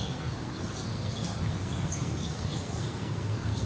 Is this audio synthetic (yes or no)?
yes